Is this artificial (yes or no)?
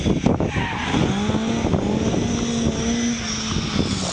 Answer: no